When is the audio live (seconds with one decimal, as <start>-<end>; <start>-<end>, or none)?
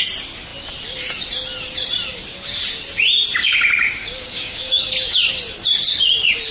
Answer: 0.0-4.0; 4.8-6.5